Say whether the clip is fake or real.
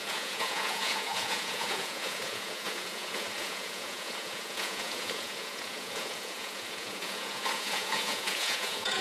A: fake